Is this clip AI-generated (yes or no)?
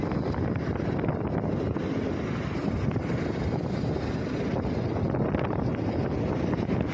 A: no